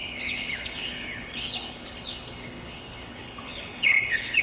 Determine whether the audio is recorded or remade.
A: remade